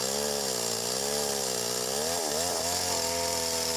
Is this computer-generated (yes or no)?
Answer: no